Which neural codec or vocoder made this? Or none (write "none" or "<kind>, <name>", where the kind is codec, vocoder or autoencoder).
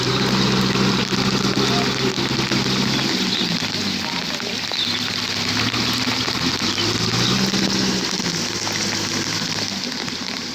none